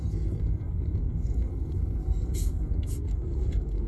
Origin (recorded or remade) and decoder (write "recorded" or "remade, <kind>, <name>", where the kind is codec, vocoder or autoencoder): remade, codec, SNAC